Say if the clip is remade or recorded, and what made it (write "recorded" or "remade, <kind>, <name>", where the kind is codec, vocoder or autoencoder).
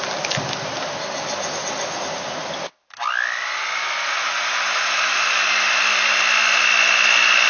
recorded